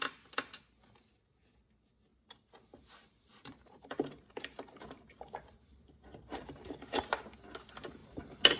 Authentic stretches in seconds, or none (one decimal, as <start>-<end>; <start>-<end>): 0.0-2.1; 7.2-8.6